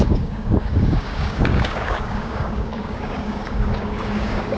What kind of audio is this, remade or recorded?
remade